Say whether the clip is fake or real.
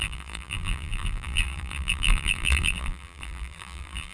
fake